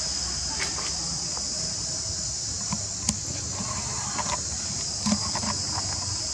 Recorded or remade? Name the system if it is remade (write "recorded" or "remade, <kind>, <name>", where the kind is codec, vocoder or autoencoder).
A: recorded